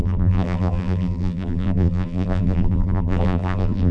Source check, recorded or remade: remade